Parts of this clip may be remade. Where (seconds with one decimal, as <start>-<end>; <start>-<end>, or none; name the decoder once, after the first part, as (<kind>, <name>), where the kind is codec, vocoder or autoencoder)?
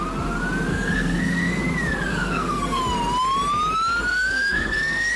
0.7-1.6 (codec, SNAC); 2.1-2.8; 4.1-5.2